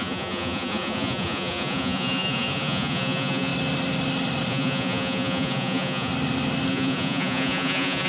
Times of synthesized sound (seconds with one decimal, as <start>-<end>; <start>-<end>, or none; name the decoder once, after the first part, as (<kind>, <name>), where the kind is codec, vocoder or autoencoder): 0.0-3.5 (vocoder, Vocos); 4.5-6.1; 6.7-8.1